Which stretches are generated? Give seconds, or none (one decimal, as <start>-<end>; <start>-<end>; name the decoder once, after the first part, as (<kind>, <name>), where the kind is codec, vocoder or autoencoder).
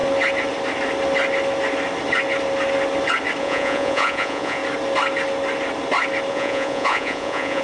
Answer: 3.4-4.6 (vocoder, Vocos); 6.3-7.6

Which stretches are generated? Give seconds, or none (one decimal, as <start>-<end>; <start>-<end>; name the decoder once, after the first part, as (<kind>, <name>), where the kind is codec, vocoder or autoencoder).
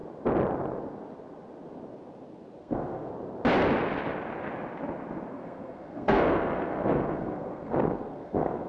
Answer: 2.6-3.1 (codec, SNAC); 5.3-8.7